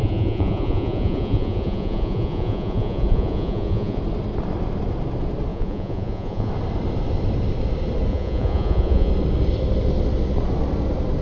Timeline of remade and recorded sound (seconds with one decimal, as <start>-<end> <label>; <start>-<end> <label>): 0.0-4.0 remade; 4.0-5.5 recorded; 5.5-6.5 remade; 6.5-8.1 recorded; 8.1-9.1 remade; 9.1-11.2 recorded